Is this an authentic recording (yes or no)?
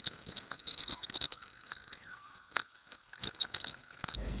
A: no